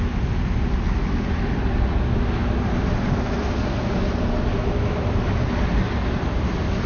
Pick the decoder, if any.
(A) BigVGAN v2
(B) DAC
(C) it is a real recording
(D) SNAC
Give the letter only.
C